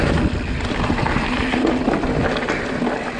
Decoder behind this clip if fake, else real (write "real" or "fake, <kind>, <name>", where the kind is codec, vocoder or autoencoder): real